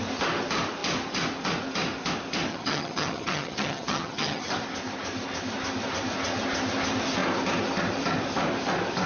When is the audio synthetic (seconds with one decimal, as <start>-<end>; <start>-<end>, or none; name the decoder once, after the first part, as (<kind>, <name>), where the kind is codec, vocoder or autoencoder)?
2.5-4.5 (vocoder, HiFi-GAN)